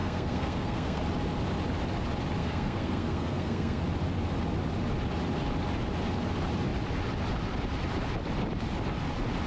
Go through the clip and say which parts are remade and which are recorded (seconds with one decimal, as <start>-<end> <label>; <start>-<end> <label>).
0.0-1.0 remade; 1.0-2.4 recorded; 2.4-3.8 remade; 3.8-9.5 recorded